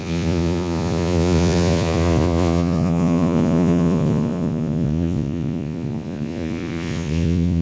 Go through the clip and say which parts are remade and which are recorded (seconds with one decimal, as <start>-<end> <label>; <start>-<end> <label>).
0.0-7.6 remade